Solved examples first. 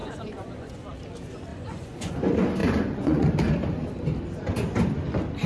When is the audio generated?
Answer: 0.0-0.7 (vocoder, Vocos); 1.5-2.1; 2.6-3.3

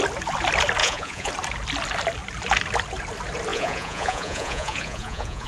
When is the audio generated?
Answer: 0.8-1.3 (vocoder, Vocos); 3.5-5.5

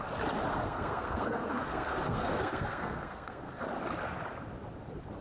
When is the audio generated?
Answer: 0.5-3.6 (codec, SNAC)

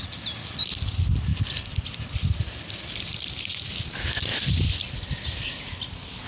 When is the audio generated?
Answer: none

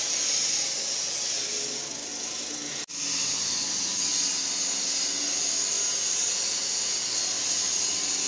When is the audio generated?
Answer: none

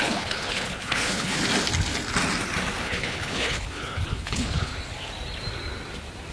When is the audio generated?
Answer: 0.0-1.4 (codec, HILCodec); 2.8-4.7

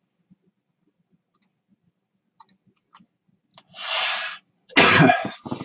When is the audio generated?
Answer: none